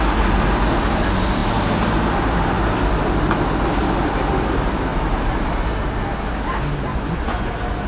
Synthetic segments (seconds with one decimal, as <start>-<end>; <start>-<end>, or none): 6.9-7.5